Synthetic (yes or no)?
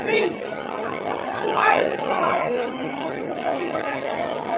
yes